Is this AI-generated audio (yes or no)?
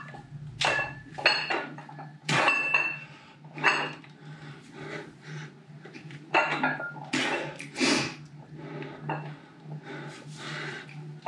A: no